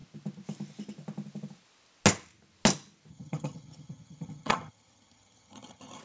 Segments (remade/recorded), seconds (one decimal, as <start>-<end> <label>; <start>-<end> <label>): 0.0-3.1 recorded; 3.1-6.0 remade